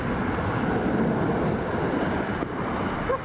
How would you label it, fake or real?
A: real